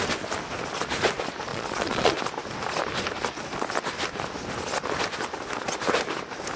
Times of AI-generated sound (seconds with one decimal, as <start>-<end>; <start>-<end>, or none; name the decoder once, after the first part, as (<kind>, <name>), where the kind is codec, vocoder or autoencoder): 1.5-2.2 (vocoder, Vocos)